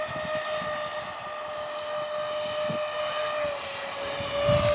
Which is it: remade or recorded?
recorded